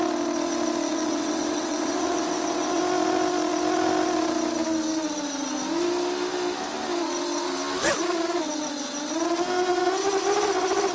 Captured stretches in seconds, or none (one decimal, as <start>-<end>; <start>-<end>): 0.0-0.9; 2.8-10.9